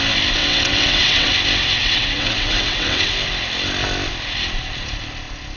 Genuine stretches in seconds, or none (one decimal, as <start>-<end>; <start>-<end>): 0.0-0.4; 1.3-1.8; 3.1-5.6